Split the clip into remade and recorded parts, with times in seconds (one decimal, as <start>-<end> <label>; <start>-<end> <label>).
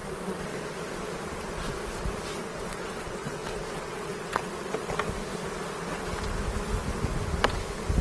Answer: 0.0-2.5 recorded; 2.5-4.5 remade; 4.5-8.0 recorded